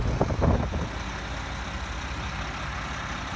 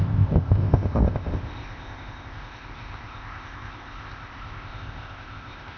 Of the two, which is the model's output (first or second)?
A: second